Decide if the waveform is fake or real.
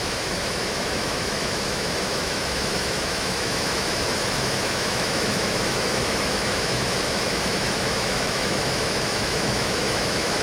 fake